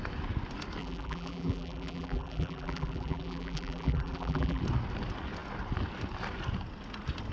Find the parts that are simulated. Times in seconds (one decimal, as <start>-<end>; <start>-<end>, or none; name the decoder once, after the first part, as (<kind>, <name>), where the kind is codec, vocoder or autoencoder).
0.8-4.6 (vocoder, BigVGAN v2)